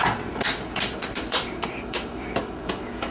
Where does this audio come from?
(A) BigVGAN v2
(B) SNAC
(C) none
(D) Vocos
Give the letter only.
A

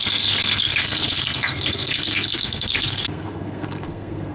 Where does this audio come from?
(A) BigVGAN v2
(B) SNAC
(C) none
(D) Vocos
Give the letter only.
B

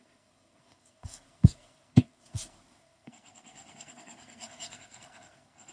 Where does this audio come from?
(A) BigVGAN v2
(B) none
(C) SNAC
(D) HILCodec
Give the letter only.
C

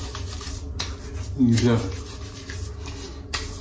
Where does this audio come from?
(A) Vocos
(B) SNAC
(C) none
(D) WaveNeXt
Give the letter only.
C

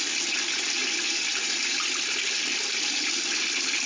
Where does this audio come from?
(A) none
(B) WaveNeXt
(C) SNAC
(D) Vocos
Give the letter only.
A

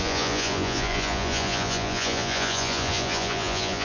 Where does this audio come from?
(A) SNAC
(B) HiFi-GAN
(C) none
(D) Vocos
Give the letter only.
D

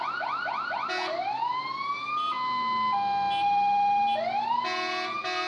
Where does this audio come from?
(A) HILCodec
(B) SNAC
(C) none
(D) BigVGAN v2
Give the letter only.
C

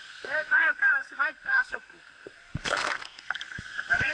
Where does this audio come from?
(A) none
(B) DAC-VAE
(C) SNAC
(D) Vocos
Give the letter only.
C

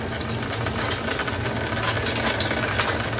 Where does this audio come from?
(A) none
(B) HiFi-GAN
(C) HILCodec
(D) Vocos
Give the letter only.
A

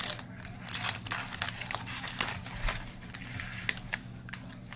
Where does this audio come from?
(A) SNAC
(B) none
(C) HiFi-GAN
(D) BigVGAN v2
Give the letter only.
B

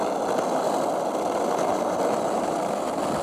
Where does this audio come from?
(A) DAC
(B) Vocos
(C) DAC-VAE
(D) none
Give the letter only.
D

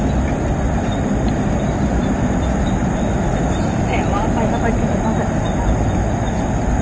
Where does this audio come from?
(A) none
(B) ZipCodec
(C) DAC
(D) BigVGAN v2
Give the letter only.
A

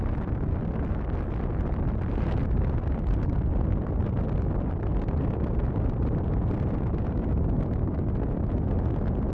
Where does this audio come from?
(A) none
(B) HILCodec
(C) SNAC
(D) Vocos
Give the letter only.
A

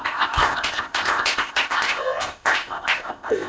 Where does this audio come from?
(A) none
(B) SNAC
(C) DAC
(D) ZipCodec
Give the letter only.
D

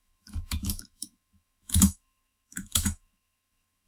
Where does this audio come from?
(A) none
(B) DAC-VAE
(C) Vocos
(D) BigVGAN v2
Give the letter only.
B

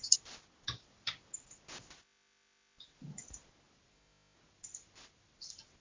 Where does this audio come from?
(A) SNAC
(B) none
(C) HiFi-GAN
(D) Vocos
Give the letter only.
B